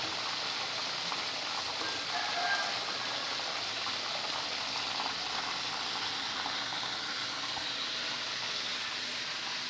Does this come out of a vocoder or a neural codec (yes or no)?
no